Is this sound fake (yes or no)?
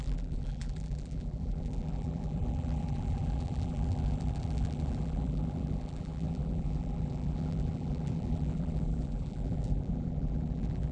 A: yes